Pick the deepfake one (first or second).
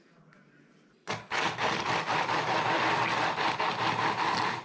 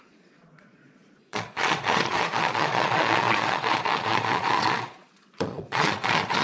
second